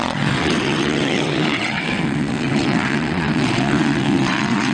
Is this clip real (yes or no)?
no